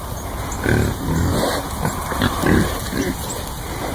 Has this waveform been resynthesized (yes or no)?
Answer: no